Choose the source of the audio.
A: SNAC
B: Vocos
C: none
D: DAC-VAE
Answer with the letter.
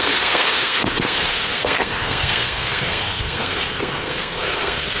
A